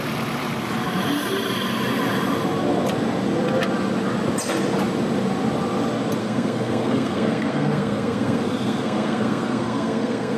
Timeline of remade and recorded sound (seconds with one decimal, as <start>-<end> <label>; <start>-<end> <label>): 0.0-6.2 recorded; 6.2-10.4 remade

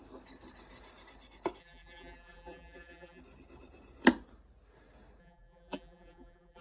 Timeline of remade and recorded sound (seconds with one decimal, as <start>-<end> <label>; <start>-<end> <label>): 0.0-1.6 recorded; 1.6-3.2 remade; 3.2-5.2 recorded; 5.2-6.6 remade

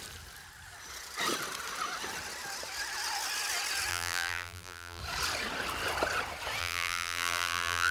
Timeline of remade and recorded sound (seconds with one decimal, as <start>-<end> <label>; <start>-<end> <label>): 0.0-3.9 recorded; 3.9-5.0 remade; 5.0-6.6 recorded; 6.6-7.9 remade